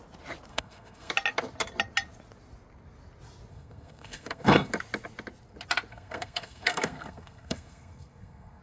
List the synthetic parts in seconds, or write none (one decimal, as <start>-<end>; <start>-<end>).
0.5-1.1; 3.5-4.7; 5.9-8.6